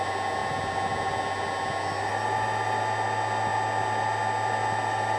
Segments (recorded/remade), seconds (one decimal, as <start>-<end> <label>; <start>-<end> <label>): 0.0-5.2 recorded